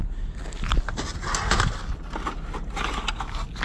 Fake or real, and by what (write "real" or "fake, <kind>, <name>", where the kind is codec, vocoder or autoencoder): real